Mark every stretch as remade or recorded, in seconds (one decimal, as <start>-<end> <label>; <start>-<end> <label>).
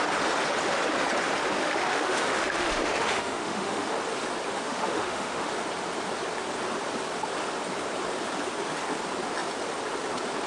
0.0-1.6 recorded; 1.6-3.9 remade; 3.9-4.5 recorded; 4.5-5.5 remade; 5.5-10.5 recorded